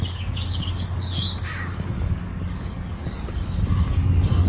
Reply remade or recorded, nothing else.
remade